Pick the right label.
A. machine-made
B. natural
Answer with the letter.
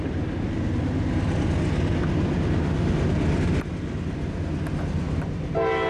B